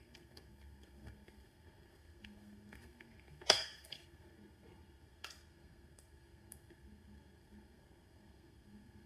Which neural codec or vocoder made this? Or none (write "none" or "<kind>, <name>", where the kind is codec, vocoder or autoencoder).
codec, SNAC